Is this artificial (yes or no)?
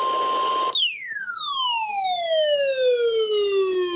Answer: no